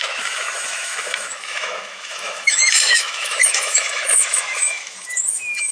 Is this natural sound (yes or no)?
no